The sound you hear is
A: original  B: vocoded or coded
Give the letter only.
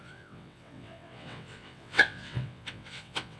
B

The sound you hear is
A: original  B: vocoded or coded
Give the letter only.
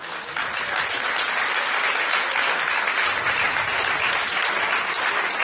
A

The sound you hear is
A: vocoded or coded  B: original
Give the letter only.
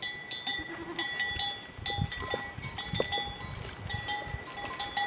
B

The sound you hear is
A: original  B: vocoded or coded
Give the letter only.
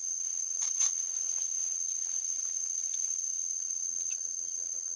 B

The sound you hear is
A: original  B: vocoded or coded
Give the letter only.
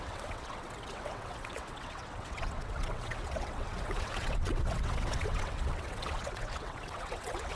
B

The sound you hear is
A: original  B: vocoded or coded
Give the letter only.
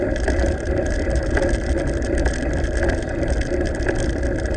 A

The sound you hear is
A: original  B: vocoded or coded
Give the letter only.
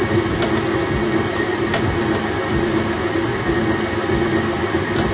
A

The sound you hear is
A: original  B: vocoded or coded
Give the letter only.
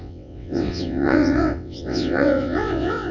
B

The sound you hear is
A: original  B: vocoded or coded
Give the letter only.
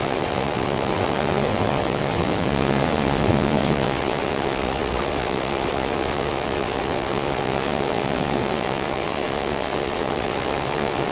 B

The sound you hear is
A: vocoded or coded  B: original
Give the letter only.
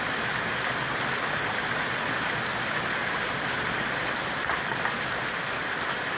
B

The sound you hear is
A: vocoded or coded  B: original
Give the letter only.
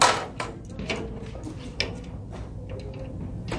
B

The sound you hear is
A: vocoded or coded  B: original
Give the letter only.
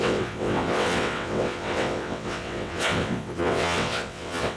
A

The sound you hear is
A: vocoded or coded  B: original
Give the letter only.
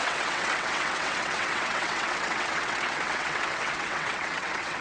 A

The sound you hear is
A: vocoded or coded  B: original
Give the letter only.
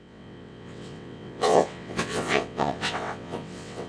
A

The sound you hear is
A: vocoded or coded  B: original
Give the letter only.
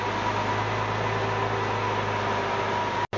B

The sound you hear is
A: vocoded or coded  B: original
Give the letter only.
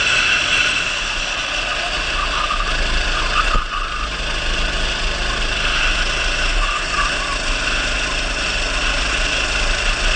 B